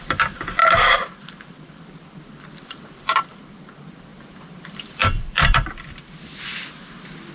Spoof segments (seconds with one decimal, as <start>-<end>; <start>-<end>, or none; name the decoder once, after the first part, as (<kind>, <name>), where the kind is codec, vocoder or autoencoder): 0.6-3.3 (vocoder, BigVGAN v2); 4.1-5.7

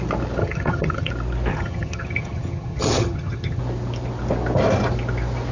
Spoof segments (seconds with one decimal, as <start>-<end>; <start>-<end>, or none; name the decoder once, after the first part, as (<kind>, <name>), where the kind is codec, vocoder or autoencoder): 0.4-1.1 (vocoder, HiFi-GAN); 1.5-3.6

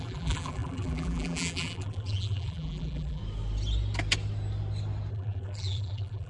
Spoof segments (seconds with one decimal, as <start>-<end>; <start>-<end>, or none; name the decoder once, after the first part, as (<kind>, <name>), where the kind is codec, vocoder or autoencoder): 0.0-3.2 (vocoder, BigVGAN v2); 5.1-6.3

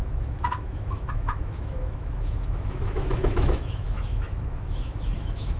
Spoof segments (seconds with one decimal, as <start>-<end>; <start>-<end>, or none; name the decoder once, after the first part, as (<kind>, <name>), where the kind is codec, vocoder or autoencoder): 0.0-5.6 (autoencoder, DAC-VAE)

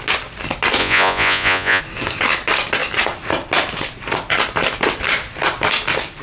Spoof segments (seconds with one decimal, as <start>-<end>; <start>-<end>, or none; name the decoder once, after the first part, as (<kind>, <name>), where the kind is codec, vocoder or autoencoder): 0.8-1.8 (vocoder, Vocos)

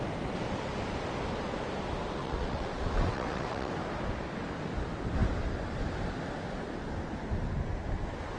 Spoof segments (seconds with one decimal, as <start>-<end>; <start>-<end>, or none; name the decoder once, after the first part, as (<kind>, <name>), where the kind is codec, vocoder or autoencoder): 2.2-3.7 (vocoder, WaveNeXt)